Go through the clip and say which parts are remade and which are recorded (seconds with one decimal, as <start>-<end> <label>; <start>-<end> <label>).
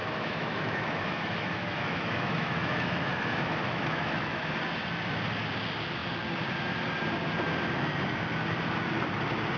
0.0-4.5 remade; 4.5-9.6 recorded